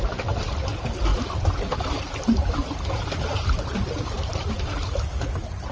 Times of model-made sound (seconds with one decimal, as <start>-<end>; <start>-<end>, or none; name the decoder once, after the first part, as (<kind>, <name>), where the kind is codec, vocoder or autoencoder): none